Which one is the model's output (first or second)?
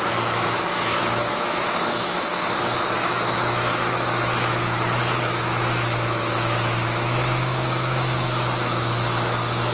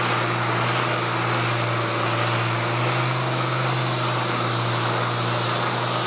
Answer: first